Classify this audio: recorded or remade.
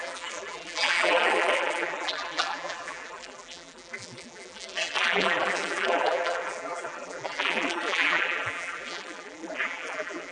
remade